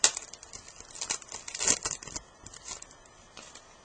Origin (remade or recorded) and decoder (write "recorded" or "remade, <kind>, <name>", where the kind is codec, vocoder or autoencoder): recorded